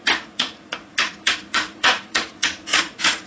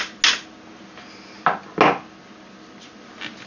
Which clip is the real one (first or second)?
second